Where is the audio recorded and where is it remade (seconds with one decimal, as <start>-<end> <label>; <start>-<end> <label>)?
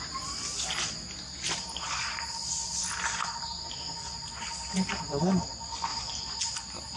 0.0-2.6 recorded; 2.6-3.6 remade; 3.6-7.0 recorded